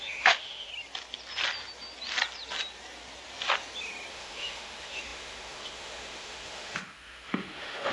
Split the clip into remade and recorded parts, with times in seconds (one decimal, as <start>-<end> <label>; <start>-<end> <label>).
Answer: 0.0-0.7 remade; 0.7-4.1 recorded; 4.1-7.9 remade